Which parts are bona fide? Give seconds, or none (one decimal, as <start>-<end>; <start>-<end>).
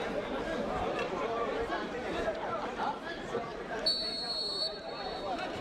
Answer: 0.0-1.5; 4.9-5.6